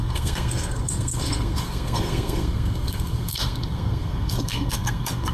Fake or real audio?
fake